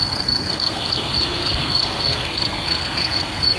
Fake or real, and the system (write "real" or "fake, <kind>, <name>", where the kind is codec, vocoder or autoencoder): fake, codec, SNAC